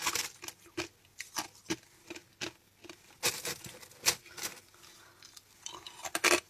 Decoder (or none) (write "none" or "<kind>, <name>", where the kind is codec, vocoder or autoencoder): none